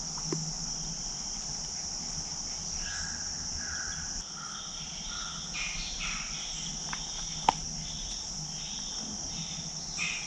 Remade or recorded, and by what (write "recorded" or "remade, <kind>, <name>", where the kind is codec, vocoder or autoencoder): recorded